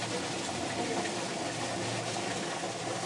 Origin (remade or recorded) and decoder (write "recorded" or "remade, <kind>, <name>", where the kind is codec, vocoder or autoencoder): recorded